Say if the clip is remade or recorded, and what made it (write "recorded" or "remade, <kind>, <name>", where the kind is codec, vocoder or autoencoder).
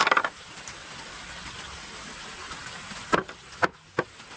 recorded